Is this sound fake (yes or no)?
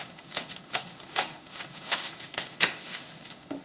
yes